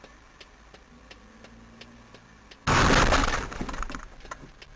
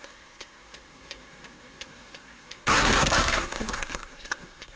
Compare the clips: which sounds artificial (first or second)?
second